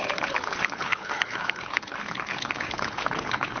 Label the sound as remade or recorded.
remade